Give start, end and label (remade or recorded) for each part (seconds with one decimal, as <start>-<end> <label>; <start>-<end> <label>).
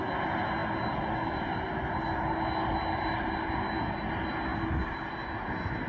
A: 0.0-5.9 recorded